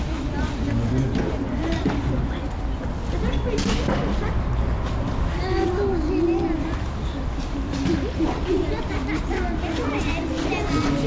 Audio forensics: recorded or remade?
recorded